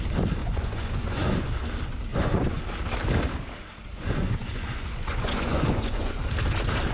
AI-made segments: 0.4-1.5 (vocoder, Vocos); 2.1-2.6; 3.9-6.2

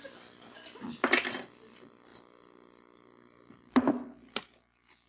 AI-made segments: none

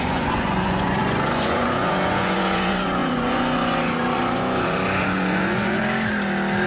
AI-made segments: 0.0-5.8 (vocoder, Vocos)